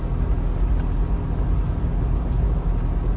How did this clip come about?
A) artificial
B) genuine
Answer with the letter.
B